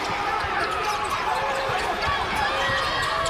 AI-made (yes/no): no